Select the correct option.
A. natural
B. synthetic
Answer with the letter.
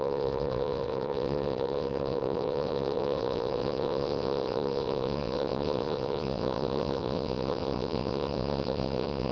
B